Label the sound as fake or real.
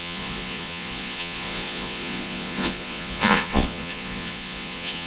fake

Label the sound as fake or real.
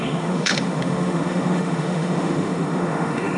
fake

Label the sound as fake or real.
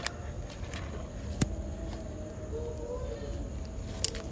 real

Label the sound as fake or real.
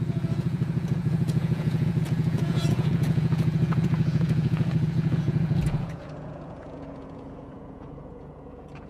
fake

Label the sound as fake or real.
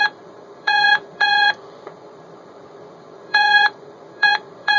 fake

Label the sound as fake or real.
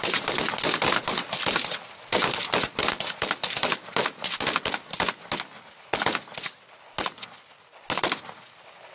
real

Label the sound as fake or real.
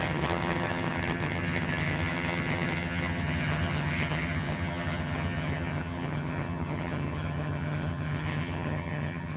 fake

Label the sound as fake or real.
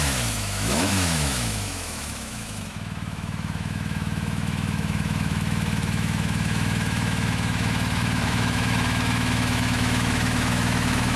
fake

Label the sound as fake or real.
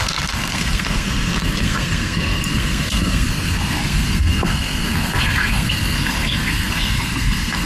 fake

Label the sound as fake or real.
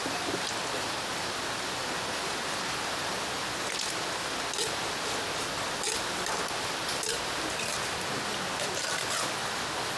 real